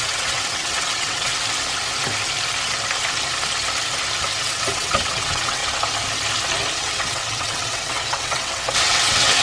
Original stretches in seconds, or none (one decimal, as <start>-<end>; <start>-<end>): 1.3-4.4; 5.6-6.8